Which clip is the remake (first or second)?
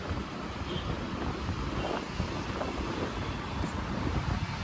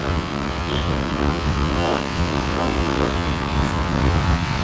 second